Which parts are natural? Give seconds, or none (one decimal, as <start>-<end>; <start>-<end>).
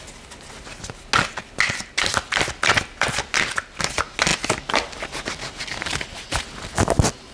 0.0-7.3